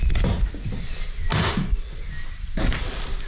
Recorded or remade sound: recorded